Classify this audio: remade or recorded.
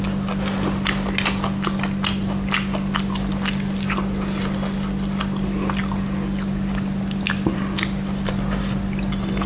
recorded